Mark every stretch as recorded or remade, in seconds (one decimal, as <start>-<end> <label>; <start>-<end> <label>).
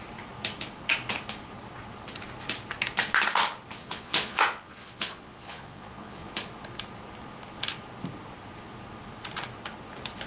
0.0-3.8 recorded; 3.8-6.3 remade; 6.3-10.3 recorded